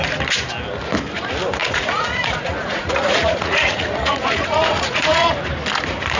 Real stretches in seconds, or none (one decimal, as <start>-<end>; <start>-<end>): 0.0-1.6; 5.3-6.2